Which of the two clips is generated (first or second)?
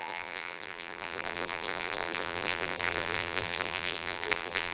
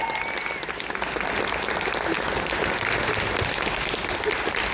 first